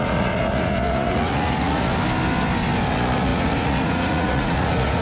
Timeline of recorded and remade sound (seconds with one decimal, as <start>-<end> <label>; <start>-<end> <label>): 0.0-1.9 remade; 1.9-2.9 recorded; 2.9-5.0 remade